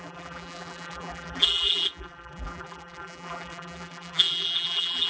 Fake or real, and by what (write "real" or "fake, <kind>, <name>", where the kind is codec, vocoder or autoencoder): fake, vocoder, BigVGAN v2